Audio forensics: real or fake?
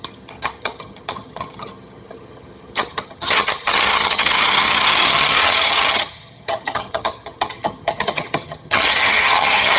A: fake